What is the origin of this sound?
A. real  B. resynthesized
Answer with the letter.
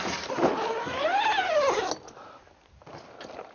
A